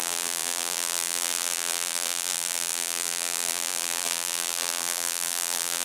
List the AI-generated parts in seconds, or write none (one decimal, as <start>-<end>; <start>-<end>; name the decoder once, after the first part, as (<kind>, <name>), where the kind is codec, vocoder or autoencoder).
0.0-5.8 (vocoder, BigVGAN v2)